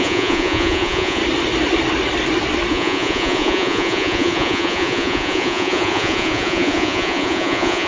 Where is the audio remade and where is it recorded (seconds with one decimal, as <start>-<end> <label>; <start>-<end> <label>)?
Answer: 0.0-1.2 remade; 1.2-2.7 recorded; 2.7-7.9 remade